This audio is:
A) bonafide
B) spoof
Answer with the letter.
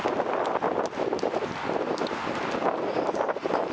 A